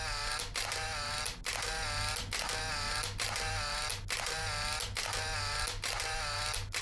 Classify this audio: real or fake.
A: real